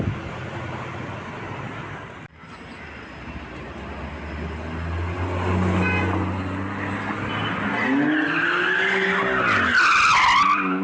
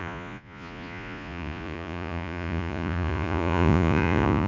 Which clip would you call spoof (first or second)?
second